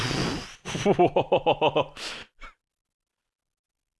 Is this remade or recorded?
recorded